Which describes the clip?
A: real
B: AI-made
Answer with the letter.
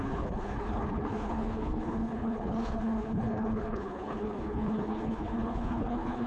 B